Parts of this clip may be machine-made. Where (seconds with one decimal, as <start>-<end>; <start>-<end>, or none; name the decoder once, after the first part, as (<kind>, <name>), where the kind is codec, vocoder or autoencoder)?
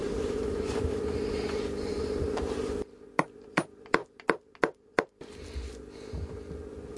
0.0-0.9 (vocoder, BigVGAN v2); 1.9-3.1; 4.0-5.0